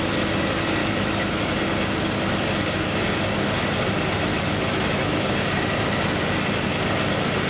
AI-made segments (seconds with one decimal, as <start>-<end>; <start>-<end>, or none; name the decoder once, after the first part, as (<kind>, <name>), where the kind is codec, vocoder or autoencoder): 0.8-1.5 (autoencoder, DAC-VAE); 4.3-5.3